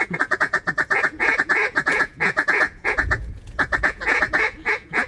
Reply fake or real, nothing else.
fake